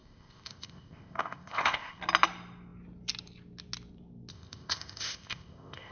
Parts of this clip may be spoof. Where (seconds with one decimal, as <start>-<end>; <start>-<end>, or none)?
0.0-2.0; 4.3-5.9

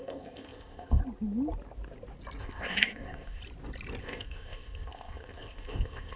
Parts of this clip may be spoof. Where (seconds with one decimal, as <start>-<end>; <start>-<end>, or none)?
0.0-1.0; 2.4-3.4; 4.0-6.2

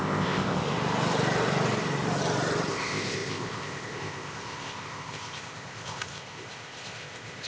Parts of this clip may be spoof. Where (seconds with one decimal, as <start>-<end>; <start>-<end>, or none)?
0.0-0.6; 2.7-7.5

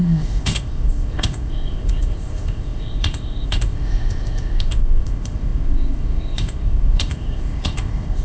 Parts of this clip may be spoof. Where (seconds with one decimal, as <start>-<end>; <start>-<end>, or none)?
0.0-8.2